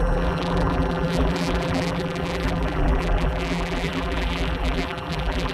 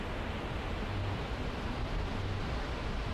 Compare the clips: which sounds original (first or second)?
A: second